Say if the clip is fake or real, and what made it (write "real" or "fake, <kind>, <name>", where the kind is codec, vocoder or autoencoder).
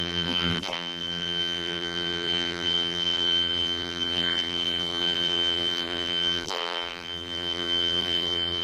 fake, vocoder, BigVGAN v2